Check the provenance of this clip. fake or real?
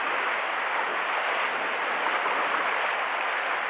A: real